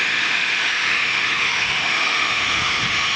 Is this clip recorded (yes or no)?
no